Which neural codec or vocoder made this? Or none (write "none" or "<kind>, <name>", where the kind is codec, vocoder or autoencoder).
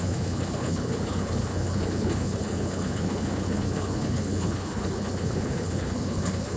codec, HILCodec